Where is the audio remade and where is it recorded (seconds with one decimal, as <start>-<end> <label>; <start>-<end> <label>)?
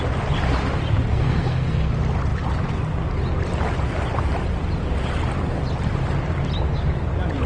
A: 0.0-1.1 recorded; 1.1-1.9 remade; 1.9-7.5 recorded